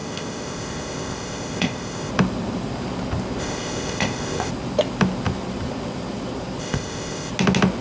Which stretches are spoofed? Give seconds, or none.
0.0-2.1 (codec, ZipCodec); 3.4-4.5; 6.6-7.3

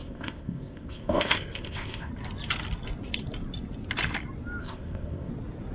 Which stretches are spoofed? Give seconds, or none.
0.0-2.1 (codec, ZipCodec); 4.6-5.3

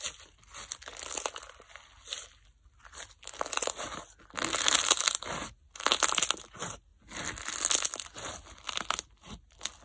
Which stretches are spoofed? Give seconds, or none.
none

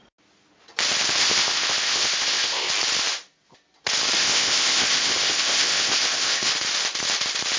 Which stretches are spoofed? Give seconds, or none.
1.2-2.7 (codec, ZipCodec); 4.2-6.5

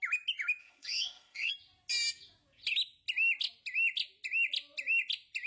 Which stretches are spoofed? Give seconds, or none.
0.6-1.5 (codec, ZipCodec)

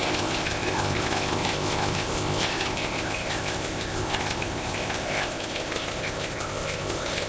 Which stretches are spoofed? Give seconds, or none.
0.0-7.3 (codec, ZipCodec)